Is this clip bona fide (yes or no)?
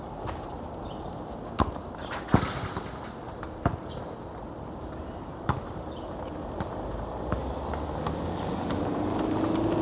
yes